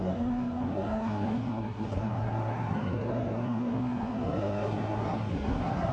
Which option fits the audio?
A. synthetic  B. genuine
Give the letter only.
A